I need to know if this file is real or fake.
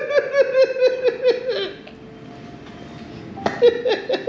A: real